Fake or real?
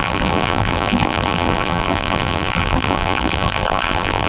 fake